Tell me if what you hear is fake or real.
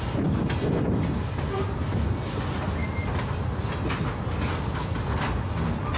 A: real